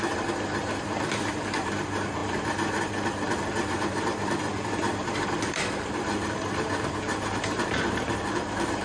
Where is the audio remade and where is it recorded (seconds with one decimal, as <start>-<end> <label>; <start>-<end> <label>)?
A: 0.0-8.8 remade